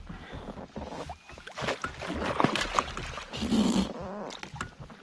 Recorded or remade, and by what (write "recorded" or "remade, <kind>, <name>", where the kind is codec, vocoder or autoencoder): recorded